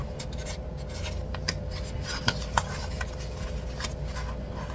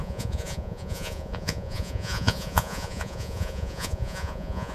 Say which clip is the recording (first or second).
first